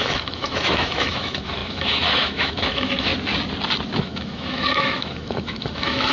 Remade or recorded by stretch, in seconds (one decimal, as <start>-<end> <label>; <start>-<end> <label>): 0.0-3.1 remade; 3.1-4.0 recorded; 4.0-6.1 remade

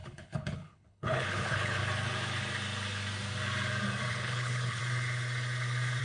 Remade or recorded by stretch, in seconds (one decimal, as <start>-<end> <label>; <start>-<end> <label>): 0.0-1.8 remade; 1.8-4.1 recorded; 4.1-4.8 remade; 4.8-6.0 recorded

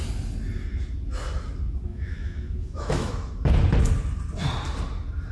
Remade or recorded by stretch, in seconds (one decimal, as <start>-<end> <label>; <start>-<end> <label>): 0.0-1.9 recorded; 1.9-3.1 remade; 3.1-5.3 recorded